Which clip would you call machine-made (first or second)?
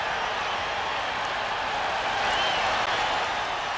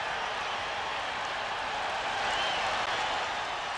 second